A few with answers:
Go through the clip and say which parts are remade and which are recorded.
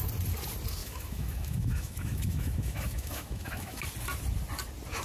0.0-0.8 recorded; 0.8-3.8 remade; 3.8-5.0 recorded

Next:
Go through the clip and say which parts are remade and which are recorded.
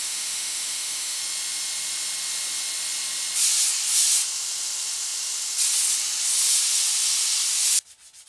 0.0-1.2 remade; 1.2-8.3 recorded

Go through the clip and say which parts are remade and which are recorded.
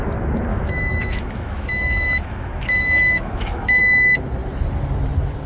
0.0-0.5 recorded; 0.5-3.8 remade; 3.8-5.5 recorded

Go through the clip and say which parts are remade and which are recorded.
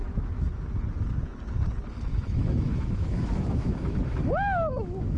0.0-0.6 remade; 0.6-2.1 recorded; 2.1-5.2 remade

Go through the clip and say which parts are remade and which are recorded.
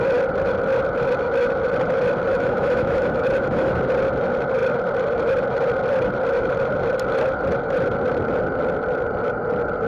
0.0-2.3 recorded; 2.3-3.7 remade; 3.7-9.9 recorded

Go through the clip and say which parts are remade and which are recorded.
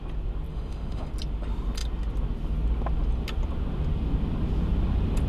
0.0-0.5 recorded; 0.5-1.1 remade; 1.1-5.3 recorded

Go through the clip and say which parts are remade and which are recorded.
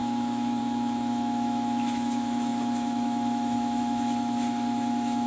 0.0-5.3 remade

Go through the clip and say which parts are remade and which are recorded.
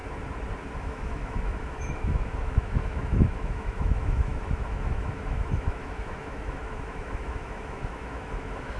0.0-0.8 recorded; 0.8-8.8 remade